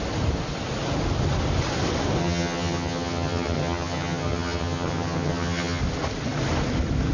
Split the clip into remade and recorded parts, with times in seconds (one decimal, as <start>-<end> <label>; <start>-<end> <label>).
0.0-2.2 recorded; 2.2-5.8 remade; 5.8-7.1 recorded